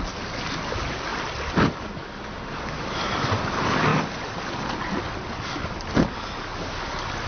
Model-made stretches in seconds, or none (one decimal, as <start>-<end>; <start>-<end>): none